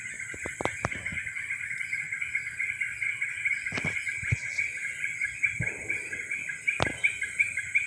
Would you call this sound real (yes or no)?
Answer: yes